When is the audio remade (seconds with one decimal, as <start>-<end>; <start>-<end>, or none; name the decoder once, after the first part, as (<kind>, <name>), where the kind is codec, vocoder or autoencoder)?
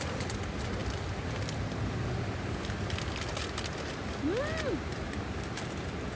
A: none